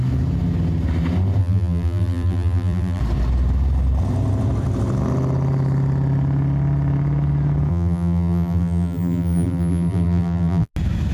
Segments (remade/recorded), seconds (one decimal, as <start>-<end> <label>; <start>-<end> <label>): 0.0-1.4 recorded; 1.4-3.0 remade; 3.0-7.7 recorded; 7.7-10.7 remade; 10.7-11.1 recorded